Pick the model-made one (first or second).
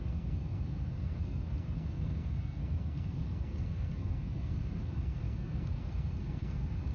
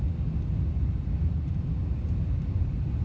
first